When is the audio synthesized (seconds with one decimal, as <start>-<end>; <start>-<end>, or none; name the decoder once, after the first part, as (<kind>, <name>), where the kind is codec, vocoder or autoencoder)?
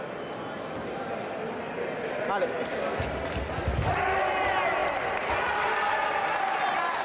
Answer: none